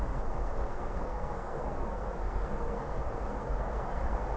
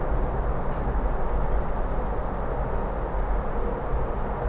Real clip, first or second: second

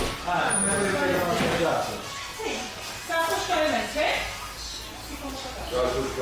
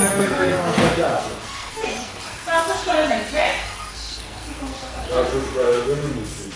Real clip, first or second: first